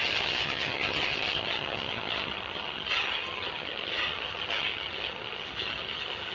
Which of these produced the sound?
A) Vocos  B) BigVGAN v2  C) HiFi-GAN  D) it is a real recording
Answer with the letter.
C